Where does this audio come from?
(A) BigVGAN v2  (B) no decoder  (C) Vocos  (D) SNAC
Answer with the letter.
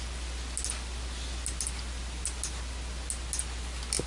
B